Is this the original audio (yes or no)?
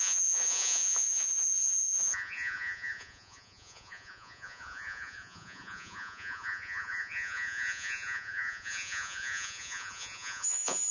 no